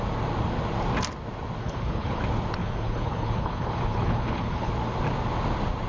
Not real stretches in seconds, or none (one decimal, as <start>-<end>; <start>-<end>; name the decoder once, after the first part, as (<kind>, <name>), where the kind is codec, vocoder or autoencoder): 1.6-2.2 (codec, HILCodec); 2.6-4.7